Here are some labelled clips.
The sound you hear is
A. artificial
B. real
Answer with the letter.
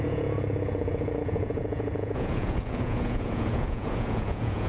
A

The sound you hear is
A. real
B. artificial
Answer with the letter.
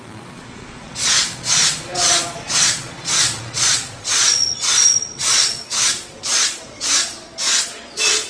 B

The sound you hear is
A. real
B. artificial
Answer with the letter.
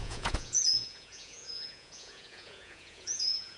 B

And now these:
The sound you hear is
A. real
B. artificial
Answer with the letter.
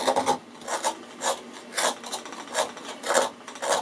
A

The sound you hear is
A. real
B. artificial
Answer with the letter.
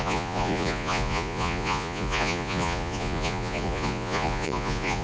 B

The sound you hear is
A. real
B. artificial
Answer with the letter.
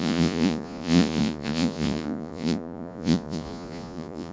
B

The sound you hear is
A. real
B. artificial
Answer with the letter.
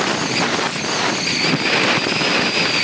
A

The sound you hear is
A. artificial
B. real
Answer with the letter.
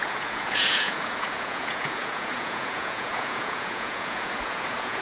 A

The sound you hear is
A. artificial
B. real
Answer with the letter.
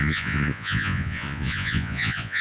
A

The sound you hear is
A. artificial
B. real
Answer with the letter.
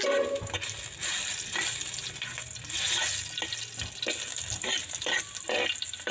B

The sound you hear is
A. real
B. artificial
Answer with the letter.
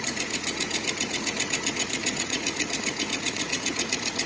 B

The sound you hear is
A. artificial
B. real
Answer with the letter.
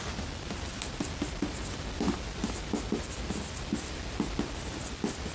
B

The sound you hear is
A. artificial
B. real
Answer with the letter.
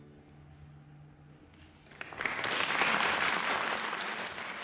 B